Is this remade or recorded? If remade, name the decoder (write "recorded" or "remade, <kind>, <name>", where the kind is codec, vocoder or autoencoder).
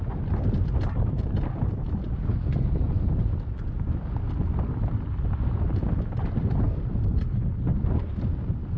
recorded